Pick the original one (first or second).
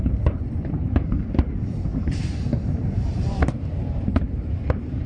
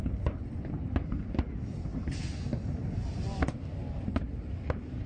second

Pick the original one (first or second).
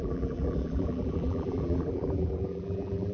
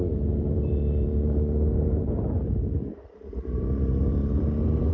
second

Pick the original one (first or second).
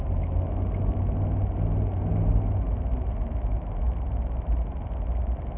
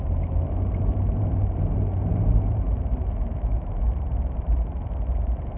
first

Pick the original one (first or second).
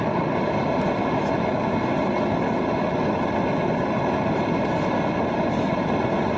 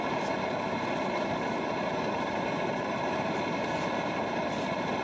first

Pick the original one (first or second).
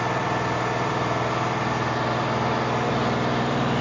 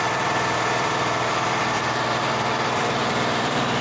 first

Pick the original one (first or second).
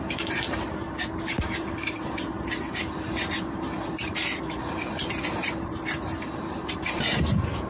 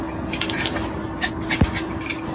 second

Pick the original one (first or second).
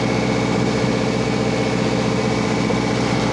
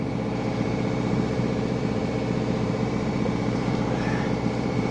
first